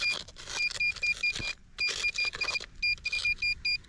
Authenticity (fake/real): real